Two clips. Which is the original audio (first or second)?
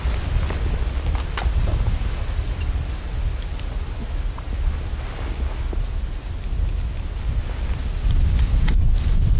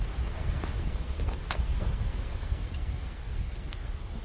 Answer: first